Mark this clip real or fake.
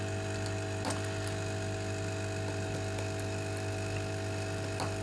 real